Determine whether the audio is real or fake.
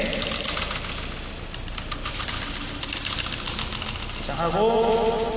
real